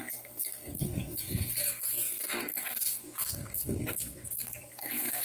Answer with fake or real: fake